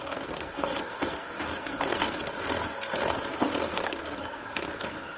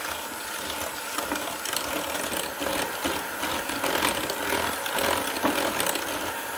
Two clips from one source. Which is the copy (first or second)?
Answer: first